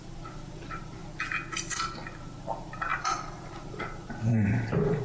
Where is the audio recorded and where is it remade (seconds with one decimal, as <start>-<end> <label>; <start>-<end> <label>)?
0.0-1.0 remade; 1.0-2.2 recorded; 2.2-5.0 remade